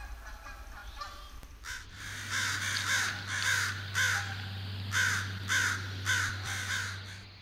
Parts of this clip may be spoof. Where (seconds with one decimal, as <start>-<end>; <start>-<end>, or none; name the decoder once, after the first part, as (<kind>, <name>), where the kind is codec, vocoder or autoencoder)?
6.1-6.7 (vocoder, BigVGAN v2)